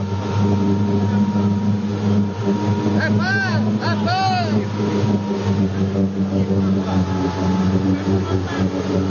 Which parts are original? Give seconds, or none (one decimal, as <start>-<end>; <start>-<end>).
0.0-9.1